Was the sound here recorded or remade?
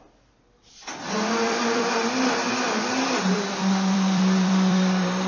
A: remade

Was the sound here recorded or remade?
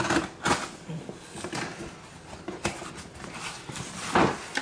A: recorded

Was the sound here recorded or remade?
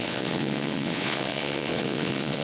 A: remade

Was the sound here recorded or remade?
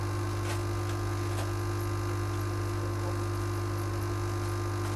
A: recorded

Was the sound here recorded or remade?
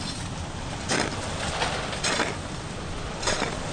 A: recorded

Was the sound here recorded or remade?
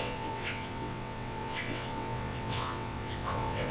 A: remade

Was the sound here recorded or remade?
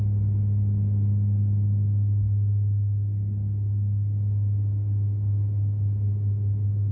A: recorded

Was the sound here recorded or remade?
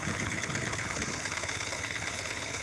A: remade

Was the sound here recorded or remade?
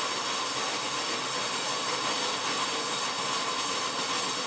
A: recorded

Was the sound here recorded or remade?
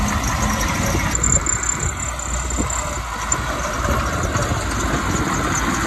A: recorded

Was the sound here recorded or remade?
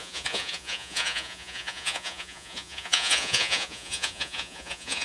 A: remade